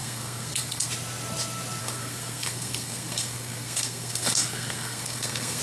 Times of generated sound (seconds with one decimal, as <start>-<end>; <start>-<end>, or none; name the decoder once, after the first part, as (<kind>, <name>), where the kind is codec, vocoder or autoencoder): 0.0-0.9 (codec, SNAC); 1.8-5.6